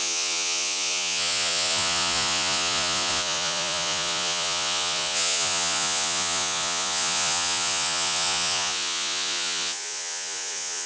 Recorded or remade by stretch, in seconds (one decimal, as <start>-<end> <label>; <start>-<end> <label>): 0.0-10.9 remade